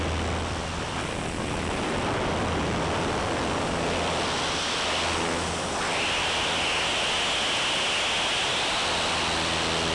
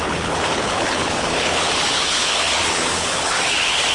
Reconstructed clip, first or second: second